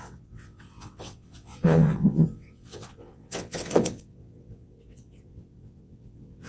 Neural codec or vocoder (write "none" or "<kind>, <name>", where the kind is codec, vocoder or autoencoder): vocoder, WaveNeXt